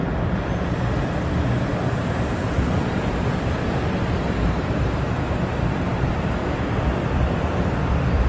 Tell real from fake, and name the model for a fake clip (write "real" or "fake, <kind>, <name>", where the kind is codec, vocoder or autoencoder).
real